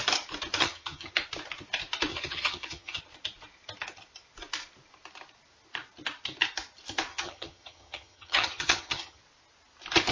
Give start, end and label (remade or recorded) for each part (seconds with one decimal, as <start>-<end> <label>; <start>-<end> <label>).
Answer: 0.0-0.6 recorded; 0.6-1.1 remade; 1.1-2.1 recorded; 2.1-3.0 remade; 3.0-7.1 recorded; 7.1-9.2 remade; 9.2-10.1 recorded